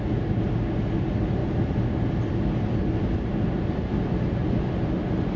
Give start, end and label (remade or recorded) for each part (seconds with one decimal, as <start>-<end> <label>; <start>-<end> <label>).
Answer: 0.0-5.4 recorded